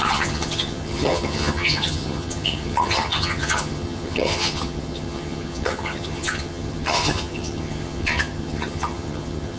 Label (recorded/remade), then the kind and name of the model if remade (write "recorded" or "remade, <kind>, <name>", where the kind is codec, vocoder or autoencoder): remade, vocoder, HiFi-GAN